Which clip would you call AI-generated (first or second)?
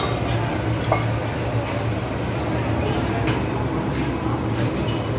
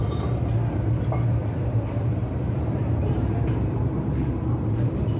second